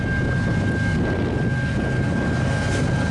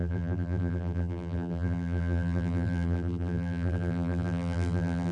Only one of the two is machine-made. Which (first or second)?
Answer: second